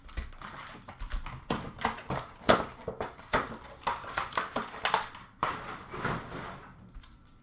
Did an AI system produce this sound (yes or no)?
no